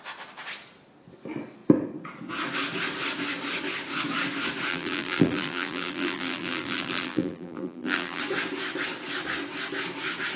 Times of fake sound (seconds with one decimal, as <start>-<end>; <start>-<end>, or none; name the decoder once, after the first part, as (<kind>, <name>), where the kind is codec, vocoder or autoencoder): 4.7-8.2 (vocoder, BigVGAN v2)